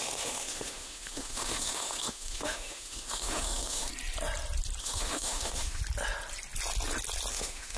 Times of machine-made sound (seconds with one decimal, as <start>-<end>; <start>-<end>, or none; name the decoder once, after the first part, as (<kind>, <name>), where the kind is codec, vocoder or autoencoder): 0.0-3.9 (autoencoder, DAC-VAE); 4.8-5.8; 7.3-7.8